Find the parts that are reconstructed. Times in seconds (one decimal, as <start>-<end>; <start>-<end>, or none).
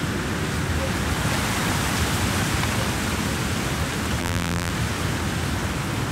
4.2-4.7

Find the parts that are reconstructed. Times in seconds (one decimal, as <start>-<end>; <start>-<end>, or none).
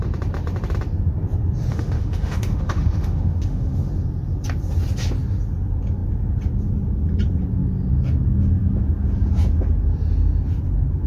1.7-3.9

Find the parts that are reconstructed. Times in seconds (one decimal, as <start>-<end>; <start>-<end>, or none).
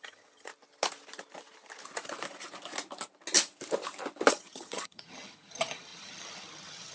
0.0-0.5; 4.3-6.9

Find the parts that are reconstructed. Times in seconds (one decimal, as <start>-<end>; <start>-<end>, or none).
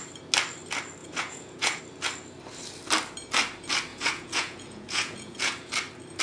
1.0-1.8; 3.9-5.7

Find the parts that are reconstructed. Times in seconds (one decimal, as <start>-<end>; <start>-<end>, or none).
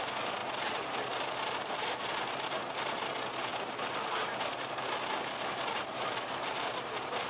none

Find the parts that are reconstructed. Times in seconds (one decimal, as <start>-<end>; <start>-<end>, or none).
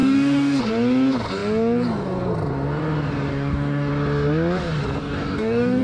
0.0-0.6; 3.3-3.9; 5.0-5.8